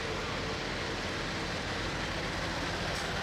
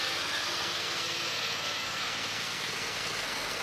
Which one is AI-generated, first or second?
second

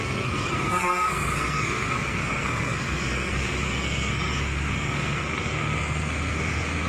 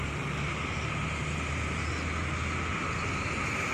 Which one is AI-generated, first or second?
first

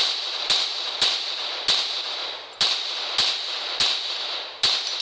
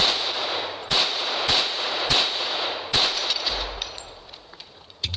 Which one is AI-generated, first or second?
second